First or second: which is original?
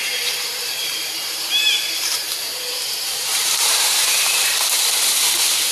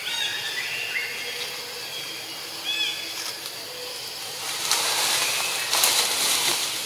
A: second